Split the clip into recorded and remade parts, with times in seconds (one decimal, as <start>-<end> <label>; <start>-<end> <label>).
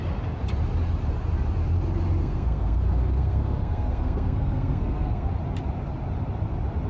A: 0.0-2.2 recorded; 2.2-5.3 remade; 5.3-6.9 recorded